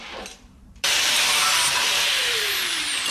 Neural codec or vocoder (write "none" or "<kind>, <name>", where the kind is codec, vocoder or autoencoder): vocoder, BigVGAN v2